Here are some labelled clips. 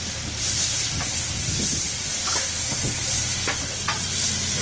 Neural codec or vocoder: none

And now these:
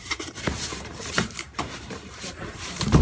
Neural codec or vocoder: vocoder, BigVGAN v2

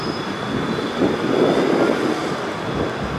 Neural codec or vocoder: none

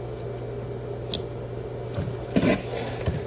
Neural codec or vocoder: none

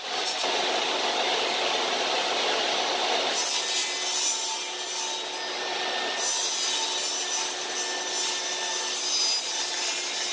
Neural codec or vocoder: none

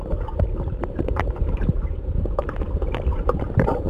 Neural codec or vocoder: vocoder, BigVGAN v2